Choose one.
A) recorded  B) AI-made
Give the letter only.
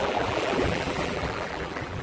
B